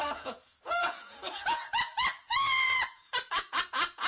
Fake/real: fake